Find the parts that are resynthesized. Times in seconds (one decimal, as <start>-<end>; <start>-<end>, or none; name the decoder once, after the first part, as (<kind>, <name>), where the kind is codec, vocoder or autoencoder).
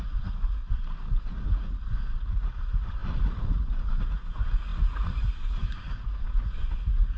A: 0.0-0.6 (vocoder, Vocos); 1.2-7.2